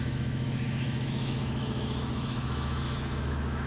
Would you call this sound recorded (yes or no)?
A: no